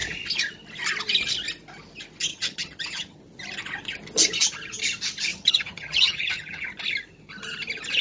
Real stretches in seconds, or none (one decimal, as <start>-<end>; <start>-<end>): 0.0-2.3; 3.2-5.3; 6.7-8.0

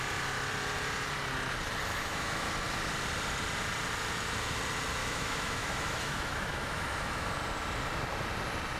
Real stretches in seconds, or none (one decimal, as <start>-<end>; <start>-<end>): 0.0-1.9; 2.5-5.0; 7.3-8.8

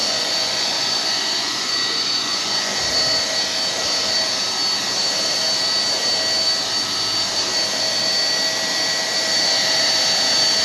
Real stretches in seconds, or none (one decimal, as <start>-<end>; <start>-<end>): 2.8-10.6

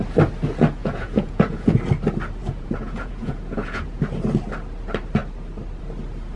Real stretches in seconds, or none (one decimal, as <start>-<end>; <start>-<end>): 0.0-0.8; 1.8-2.4; 4.0-6.4

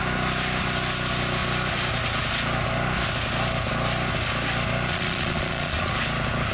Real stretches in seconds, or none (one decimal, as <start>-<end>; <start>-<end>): 0.0-4.9; 5.9-6.5